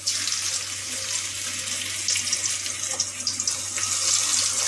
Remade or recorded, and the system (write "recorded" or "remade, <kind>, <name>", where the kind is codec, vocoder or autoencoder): recorded